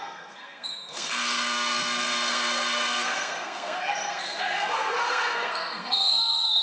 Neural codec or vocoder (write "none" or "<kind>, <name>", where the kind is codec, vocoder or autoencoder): codec, SNAC